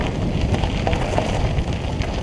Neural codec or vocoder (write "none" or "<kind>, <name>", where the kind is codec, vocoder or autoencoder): none